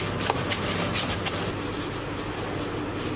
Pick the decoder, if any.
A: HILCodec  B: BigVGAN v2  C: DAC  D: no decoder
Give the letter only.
D